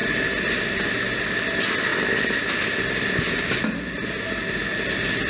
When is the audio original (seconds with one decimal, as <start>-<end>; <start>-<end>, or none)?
0.0-5.3